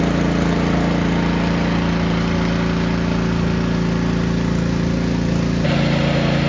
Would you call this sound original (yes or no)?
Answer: yes